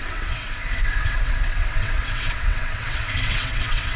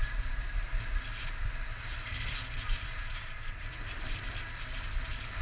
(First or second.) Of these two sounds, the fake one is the first